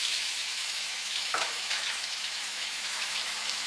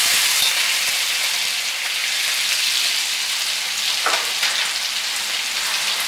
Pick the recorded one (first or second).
second